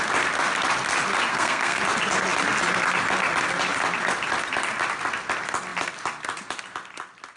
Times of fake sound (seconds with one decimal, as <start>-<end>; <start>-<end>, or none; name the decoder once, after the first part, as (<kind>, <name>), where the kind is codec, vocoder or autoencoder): 1.3-1.8 (codec, SNAC)